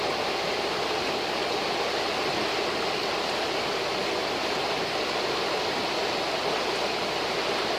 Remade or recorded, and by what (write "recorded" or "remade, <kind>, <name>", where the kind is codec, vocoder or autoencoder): recorded